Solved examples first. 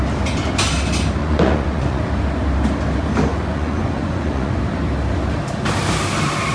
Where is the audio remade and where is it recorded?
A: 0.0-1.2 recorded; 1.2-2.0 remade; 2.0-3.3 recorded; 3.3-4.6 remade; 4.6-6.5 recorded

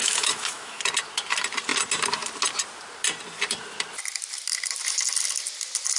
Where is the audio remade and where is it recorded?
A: 0.0-0.8 remade; 0.8-6.0 recorded

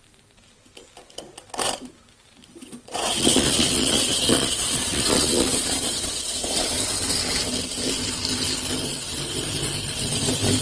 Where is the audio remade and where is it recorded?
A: 0.0-2.5 recorded; 2.5-6.8 remade; 6.8-10.6 recorded

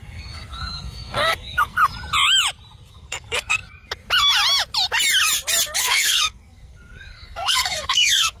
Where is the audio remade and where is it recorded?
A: 0.0-1.8 remade; 1.8-2.9 recorded; 2.9-3.6 remade; 3.6-5.8 recorded; 5.8-8.4 remade

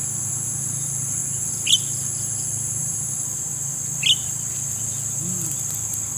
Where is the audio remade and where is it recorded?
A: 0.0-6.2 remade

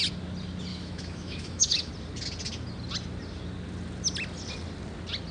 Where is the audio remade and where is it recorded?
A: 0.0-0.7 recorded; 0.7-1.9 remade; 1.9-5.3 recorded

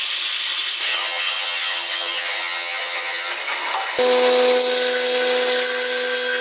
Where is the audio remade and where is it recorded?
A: 0.0-0.9 recorded; 0.9-3.3 remade; 3.3-6.4 recorded

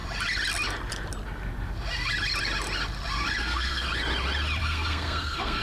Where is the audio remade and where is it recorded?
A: 0.0-3.4 recorded; 3.4-3.9 remade; 3.9-4.6 recorded; 4.6-5.6 remade